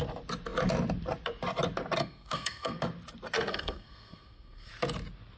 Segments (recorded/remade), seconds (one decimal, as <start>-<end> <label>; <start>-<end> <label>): 0.0-2.0 recorded; 2.0-2.8 remade; 2.8-3.5 recorded; 3.5-4.7 remade; 4.7-5.4 recorded